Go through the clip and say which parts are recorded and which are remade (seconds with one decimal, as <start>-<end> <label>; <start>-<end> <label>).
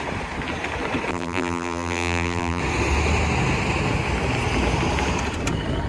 0.0-1.1 recorded; 1.1-2.6 remade; 2.6-5.9 recorded